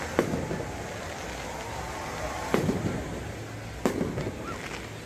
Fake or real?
real